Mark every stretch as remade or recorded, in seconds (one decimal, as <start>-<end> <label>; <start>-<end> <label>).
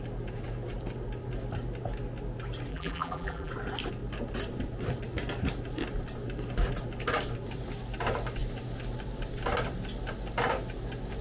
0.0-2.7 recorded; 2.7-3.5 remade; 3.5-11.2 recorded